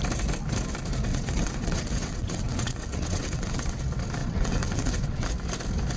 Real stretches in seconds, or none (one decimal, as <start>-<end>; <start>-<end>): 0.0-1.1; 3.8-4.2; 5.3-6.0